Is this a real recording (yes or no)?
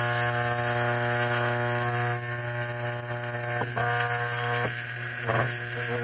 yes